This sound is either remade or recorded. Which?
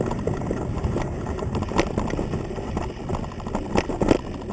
recorded